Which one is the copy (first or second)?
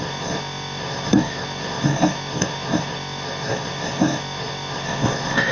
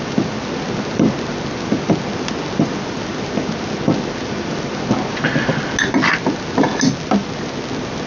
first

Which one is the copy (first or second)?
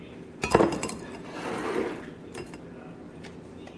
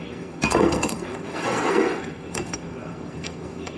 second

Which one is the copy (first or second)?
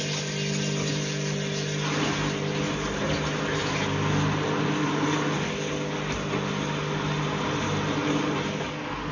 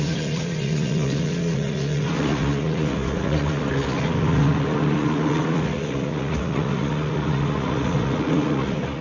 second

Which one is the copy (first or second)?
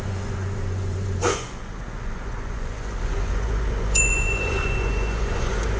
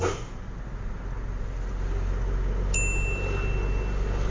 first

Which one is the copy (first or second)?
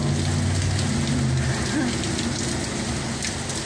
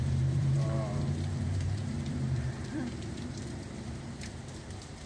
second